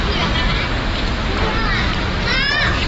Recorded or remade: recorded